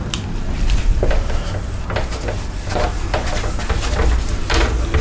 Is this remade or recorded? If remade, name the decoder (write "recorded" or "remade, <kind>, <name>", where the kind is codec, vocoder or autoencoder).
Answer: recorded